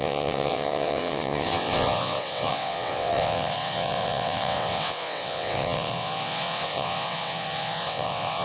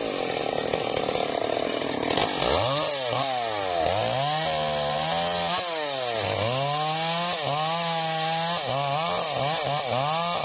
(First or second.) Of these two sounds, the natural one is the second